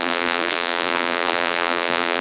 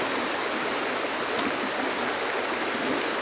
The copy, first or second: first